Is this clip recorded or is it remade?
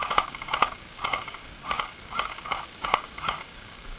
remade